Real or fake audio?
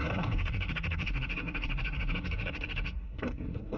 fake